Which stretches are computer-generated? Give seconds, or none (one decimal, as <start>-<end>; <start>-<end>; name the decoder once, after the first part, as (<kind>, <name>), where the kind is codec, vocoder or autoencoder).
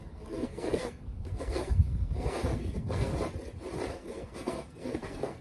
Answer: 0.0-3.1 (codec, SNAC); 3.9-5.4